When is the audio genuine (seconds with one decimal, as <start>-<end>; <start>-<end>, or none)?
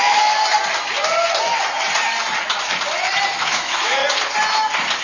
0.4-3.4; 4.0-5.0